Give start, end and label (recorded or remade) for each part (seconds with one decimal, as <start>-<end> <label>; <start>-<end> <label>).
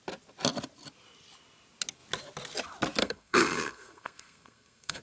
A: 0.0-3.0 recorded; 3.0-5.0 remade